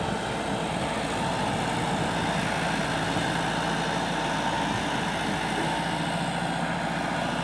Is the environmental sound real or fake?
real